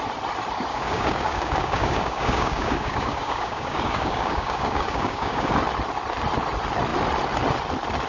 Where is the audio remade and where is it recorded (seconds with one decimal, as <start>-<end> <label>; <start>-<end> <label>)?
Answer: 0.0-0.7 recorded; 0.7-5.5 remade; 5.5-8.1 recorded

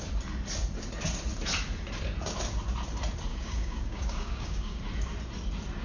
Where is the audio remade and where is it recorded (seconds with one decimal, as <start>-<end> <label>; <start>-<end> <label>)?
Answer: 0.0-3.3 recorded; 3.3-4.8 remade; 4.8-5.8 recorded

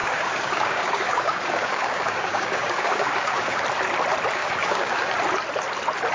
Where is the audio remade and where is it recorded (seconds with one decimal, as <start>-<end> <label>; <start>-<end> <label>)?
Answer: 0.0-3.6 remade; 3.6-4.4 recorded; 4.4-5.1 remade; 5.1-6.1 recorded

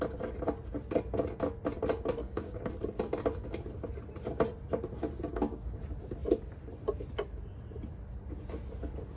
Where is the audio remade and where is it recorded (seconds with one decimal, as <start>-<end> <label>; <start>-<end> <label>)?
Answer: 0.0-2.2 recorded; 2.2-2.7 remade; 2.7-5.3 recorded; 5.3-5.8 remade; 5.8-9.2 recorded

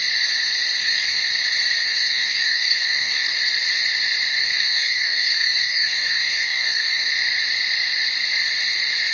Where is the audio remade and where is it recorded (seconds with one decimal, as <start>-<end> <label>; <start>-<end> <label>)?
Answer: 0.0-0.8 recorded; 0.8-1.3 remade; 1.3-1.8 recorded; 1.8-3.4 remade; 3.4-4.3 recorded; 4.3-7.1 remade; 7.1-9.1 recorded